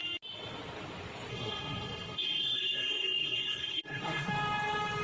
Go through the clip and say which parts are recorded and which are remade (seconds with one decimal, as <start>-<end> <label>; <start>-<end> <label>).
0.0-1.3 recorded; 1.3-4.3 remade; 4.3-5.0 recorded